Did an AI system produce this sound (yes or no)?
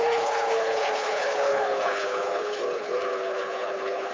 yes